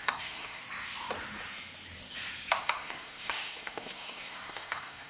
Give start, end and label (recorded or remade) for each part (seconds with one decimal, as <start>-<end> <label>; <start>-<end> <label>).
0.0-0.6 remade; 0.6-2.6 recorded; 2.6-5.1 remade